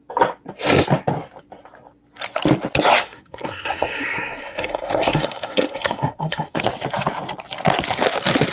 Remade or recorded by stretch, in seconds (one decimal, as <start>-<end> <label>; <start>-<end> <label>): 0.0-2.9 recorded; 2.9-6.6 remade; 6.6-8.5 recorded